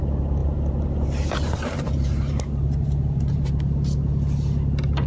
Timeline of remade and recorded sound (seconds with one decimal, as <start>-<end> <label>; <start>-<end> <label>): 0.0-0.4 recorded; 0.4-3.5 remade; 3.5-5.1 recorded